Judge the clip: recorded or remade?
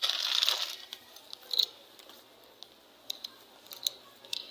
recorded